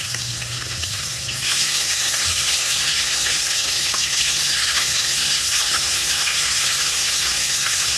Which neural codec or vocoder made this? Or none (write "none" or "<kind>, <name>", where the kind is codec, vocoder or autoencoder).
codec, SNAC